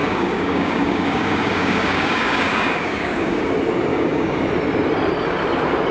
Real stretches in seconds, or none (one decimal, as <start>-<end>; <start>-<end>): 3.5-3.9; 4.4-5.9